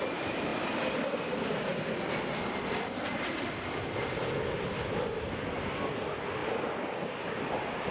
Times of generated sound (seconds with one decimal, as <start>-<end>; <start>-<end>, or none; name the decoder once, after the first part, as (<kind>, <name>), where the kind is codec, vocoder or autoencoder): none